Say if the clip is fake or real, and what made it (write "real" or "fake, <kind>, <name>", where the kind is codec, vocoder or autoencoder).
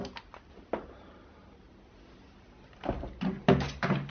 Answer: real